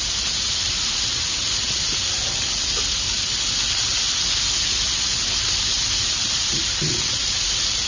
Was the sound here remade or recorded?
recorded